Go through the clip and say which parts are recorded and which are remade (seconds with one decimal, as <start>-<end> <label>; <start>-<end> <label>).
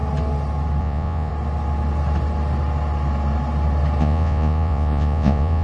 0.0-0.8 recorded; 0.8-1.3 remade; 1.3-4.0 recorded; 4.0-5.6 remade